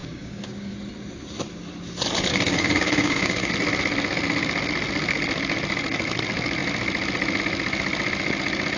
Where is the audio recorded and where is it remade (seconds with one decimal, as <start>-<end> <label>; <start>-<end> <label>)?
0.0-0.7 remade; 0.7-2.3 recorded; 2.3-3.5 remade; 3.5-8.8 recorded